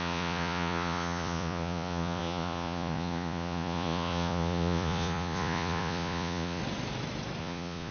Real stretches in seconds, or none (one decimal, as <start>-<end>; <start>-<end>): 6.6-7.4

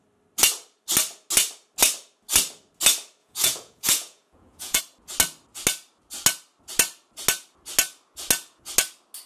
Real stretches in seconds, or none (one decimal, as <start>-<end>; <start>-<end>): 0.0-3.2; 4.8-9.3

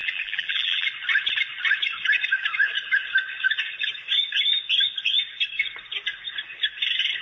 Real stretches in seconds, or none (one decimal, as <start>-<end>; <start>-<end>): 0.9-7.2

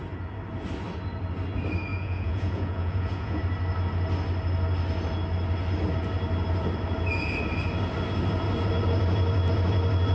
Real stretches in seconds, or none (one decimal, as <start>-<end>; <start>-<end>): 0.0-1.9; 3.4-10.1

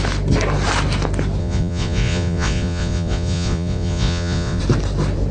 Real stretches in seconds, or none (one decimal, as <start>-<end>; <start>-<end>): 0.0-1.4; 4.6-5.3

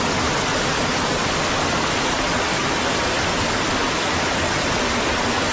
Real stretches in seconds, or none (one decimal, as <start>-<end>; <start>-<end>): 0.0-0.5; 1.0-2.5; 3.6-5.5

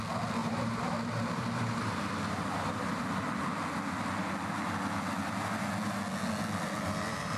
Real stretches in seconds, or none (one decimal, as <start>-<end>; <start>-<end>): 0.0-0.4; 3.1-7.4